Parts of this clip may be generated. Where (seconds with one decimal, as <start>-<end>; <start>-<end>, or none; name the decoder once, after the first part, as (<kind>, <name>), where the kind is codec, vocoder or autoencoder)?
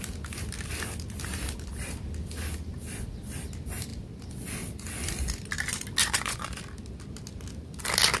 6.0-6.6 (vocoder, Vocos)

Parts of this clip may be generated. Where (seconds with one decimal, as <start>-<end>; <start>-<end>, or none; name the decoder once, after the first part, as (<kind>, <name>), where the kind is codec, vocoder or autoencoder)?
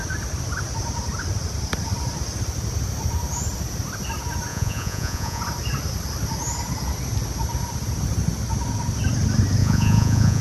4.5-5.4 (vocoder, Vocos); 9.6-10.4